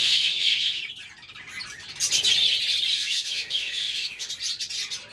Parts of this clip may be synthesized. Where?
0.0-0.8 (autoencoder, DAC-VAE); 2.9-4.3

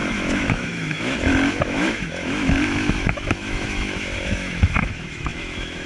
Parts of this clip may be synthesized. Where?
0.0-5.9 (autoencoder, DAC-VAE)